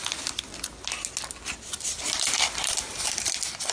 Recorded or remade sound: recorded